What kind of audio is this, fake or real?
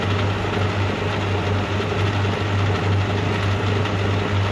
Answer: real